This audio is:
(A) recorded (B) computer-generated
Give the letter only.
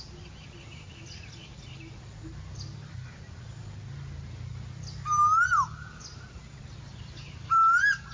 A